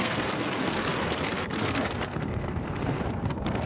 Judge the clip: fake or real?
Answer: fake